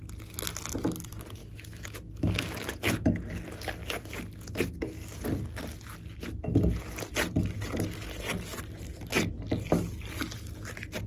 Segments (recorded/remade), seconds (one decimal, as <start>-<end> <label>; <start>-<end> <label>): 0.0-1.4 recorded; 1.4-2.7 remade; 2.7-11.1 recorded